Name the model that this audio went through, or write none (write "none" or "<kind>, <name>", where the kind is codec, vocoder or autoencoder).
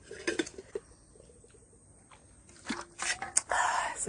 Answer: none